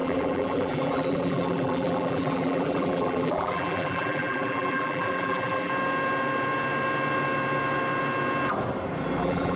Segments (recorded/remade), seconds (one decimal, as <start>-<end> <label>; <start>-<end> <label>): 0.0-5.7 remade; 5.7-9.2 recorded; 9.2-9.6 remade

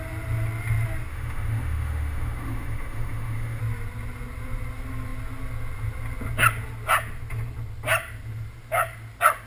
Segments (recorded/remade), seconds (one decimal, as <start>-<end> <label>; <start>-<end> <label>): 0.0-1.1 recorded; 1.1-3.6 remade; 3.6-9.5 recorded

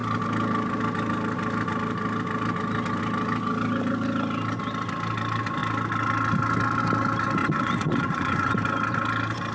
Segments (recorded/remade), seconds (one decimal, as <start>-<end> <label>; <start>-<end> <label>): 0.0-7.4 recorded; 7.4-8.5 remade; 8.5-9.5 recorded

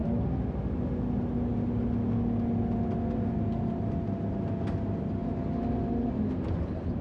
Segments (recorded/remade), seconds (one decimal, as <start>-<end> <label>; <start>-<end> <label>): 0.0-7.0 recorded

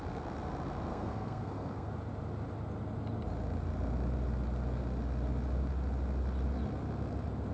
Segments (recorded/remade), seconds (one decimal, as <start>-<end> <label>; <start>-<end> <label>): 0.0-0.9 recorded; 0.9-1.9 remade; 1.9-7.5 recorded